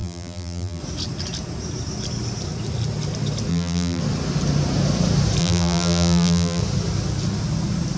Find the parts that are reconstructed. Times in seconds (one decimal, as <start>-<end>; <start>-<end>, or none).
0.0-0.8; 3.5-4.0; 5.4-6.6